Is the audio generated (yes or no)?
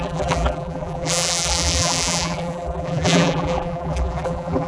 yes